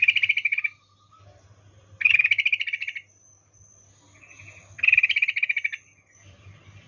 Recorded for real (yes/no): yes